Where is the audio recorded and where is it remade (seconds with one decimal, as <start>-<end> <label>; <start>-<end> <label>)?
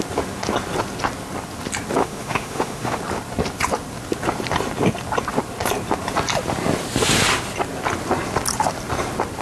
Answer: 0.0-2.0 recorded; 2.0-3.0 remade; 3.0-9.4 recorded